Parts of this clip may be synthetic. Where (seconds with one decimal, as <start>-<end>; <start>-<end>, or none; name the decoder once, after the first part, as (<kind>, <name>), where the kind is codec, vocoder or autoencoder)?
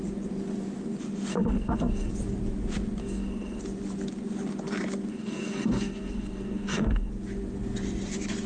1.3-2.1 (codec, SNAC); 3.0-3.6; 5.1-7.1